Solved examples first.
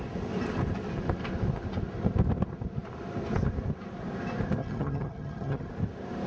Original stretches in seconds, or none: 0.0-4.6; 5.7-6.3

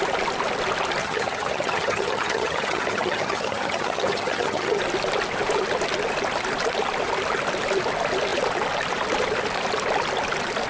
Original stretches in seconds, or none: 0.0-1.0; 4.8-10.7

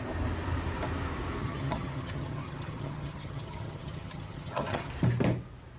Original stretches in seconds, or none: 0.0-1.4; 4.9-5.8

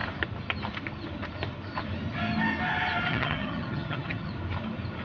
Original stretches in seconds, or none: 0.0-3.1; 4.3-5.0